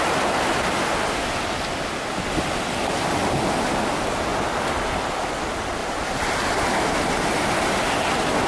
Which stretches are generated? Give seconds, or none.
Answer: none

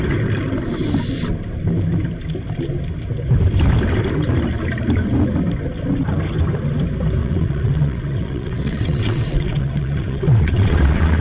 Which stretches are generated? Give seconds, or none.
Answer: 7.2-11.2 (vocoder, WaveNeXt)